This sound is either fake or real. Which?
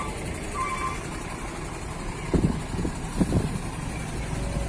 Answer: real